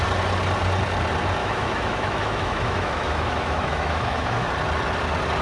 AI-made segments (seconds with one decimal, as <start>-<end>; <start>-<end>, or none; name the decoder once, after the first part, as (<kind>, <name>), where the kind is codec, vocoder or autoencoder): 1.4-4.5 (autoencoder, DAC-VAE)